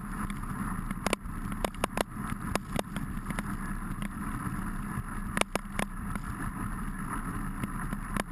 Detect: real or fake real